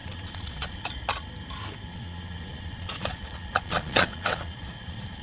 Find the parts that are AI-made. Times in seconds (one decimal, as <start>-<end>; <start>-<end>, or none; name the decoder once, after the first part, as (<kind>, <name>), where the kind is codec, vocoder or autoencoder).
0.0-1.3 (vocoder, Vocos); 1.9-5.2